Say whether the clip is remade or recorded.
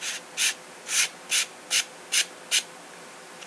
recorded